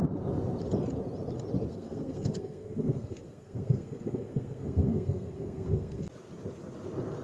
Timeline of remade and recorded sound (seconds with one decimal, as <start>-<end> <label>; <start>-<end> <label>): 0.0-1.7 recorded; 1.7-6.0 remade; 6.0-7.2 recorded